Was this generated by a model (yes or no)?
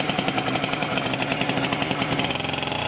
no